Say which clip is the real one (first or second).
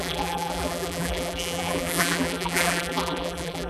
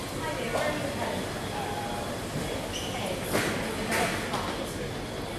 second